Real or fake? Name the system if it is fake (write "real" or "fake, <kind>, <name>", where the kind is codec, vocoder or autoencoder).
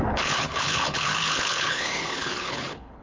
fake, codec, HILCodec